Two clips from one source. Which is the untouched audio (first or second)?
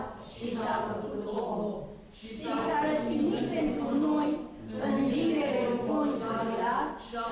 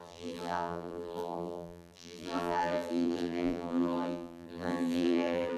first